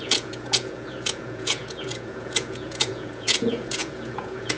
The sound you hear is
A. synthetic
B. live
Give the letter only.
A